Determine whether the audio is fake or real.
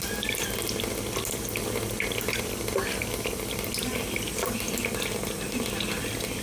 real